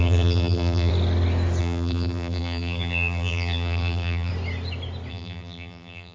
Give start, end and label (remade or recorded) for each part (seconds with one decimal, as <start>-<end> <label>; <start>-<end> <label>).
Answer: 0.0-0.9 remade; 0.9-1.6 recorded; 1.6-4.3 remade; 4.3-5.1 recorded; 5.1-6.1 remade